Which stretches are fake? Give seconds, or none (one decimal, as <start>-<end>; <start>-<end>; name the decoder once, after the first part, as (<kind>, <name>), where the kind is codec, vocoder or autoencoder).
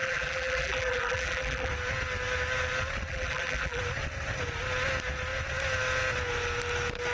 0.0-1.7 (vocoder, BigVGAN v2); 3.1-3.8